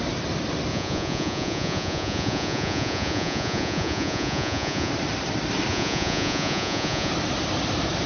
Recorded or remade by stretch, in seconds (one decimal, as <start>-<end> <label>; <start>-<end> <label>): 0.0-0.7 recorded; 0.7-4.9 remade; 4.9-5.7 recorded; 5.7-7.1 remade; 7.1-8.1 recorded